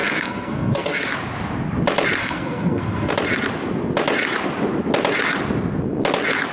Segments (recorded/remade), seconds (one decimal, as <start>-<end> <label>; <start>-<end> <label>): 0.0-1.1 remade; 1.1-2.2 recorded; 2.2-3.1 remade; 3.1-6.5 recorded